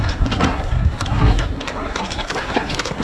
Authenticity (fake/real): fake